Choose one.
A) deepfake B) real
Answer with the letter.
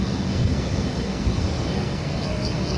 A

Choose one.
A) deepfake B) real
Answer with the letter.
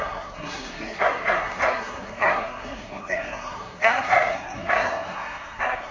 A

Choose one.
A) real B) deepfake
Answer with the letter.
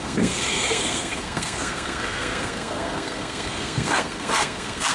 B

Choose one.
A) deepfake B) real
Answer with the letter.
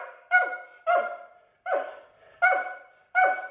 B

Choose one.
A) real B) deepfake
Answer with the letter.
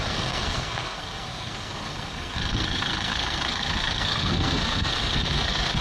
B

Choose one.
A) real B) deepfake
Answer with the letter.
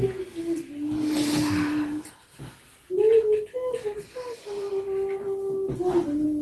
A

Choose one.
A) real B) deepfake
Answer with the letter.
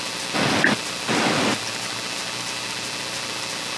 A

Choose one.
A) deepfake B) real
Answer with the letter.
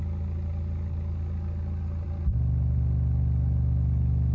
B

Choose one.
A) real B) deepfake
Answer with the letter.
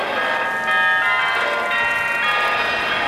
A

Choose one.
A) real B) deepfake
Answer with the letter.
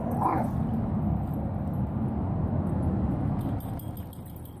A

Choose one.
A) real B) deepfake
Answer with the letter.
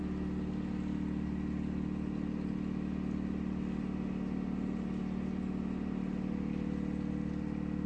A